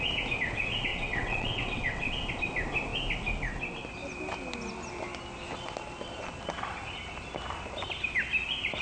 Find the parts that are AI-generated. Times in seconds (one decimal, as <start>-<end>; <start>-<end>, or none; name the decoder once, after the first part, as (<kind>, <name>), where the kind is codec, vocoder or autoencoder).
0.9-2.1 (vocoder, WaveNeXt)